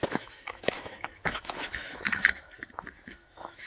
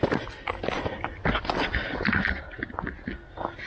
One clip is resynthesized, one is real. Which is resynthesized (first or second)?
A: first